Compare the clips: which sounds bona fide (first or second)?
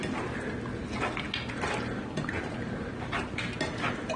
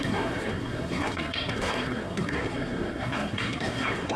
first